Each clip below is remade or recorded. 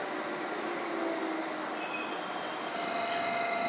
recorded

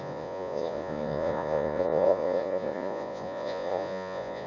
remade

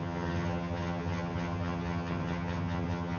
remade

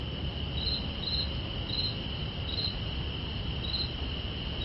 recorded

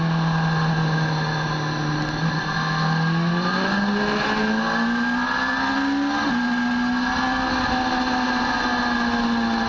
recorded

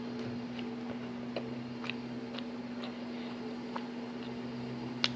recorded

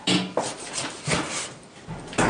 recorded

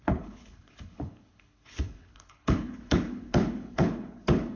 remade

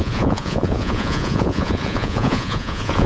remade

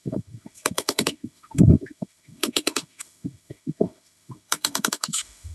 remade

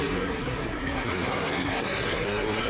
remade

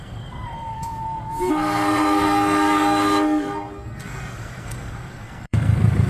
remade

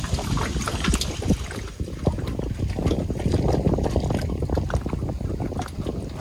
recorded